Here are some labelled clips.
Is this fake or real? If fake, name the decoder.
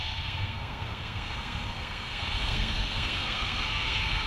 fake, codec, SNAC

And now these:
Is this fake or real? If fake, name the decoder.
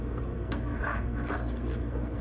fake, codec, SNAC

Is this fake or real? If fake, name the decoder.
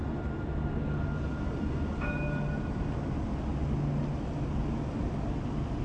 real